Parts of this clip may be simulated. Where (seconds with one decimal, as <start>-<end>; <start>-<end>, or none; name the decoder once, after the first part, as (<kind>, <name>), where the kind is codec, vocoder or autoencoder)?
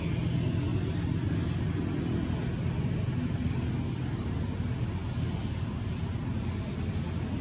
none